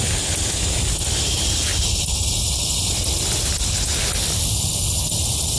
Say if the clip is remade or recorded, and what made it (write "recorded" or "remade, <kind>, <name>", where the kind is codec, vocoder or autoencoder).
remade, vocoder, BigVGAN v2